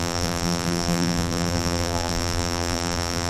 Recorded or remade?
remade